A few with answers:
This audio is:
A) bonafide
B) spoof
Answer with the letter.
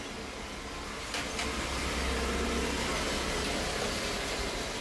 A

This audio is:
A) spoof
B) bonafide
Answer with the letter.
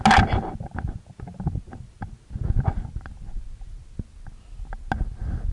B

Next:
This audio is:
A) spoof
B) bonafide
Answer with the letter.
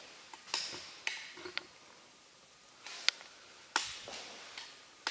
B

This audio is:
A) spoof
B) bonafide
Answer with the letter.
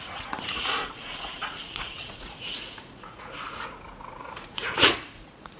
A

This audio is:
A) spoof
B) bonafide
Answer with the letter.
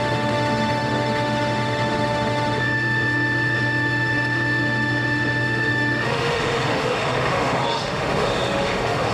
A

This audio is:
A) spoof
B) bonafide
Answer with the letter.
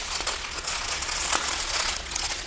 A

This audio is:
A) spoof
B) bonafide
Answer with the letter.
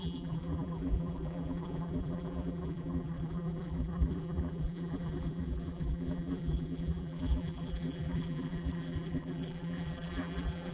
A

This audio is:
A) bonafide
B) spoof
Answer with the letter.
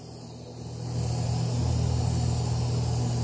A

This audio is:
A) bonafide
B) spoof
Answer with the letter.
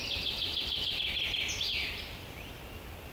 A